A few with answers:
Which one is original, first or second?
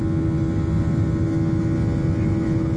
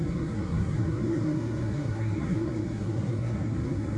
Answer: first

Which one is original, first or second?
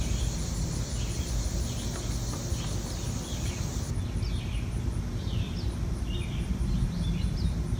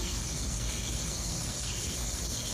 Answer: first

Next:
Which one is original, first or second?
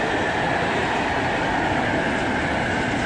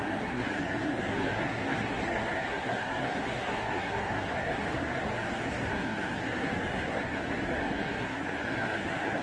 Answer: first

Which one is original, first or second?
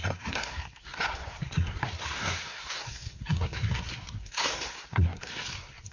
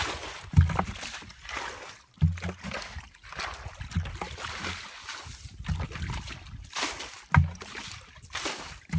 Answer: second